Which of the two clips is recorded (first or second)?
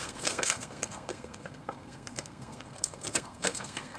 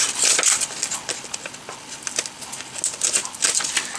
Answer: second